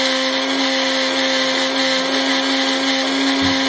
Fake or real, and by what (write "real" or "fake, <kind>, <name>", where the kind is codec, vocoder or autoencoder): real